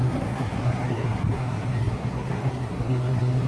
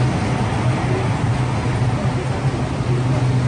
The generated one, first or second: first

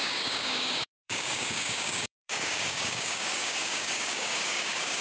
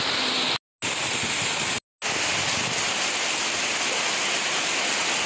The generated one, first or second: first